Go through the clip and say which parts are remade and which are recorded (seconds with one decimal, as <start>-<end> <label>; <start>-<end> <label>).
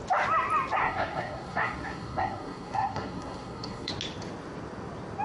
0.0-0.8 recorded; 0.8-3.9 remade; 3.9-5.2 recorded